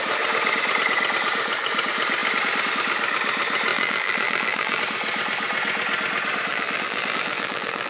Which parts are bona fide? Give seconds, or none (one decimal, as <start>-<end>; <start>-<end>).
0.0-3.7; 4.8-6.5